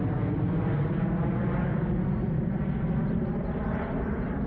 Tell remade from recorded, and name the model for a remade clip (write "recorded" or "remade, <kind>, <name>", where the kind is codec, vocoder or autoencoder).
recorded